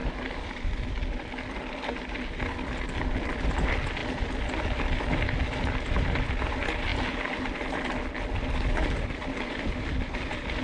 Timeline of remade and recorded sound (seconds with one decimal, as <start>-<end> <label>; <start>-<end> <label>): 0.0-10.6 recorded